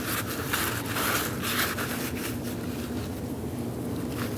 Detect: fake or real real